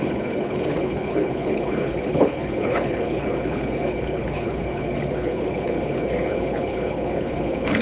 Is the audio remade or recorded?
remade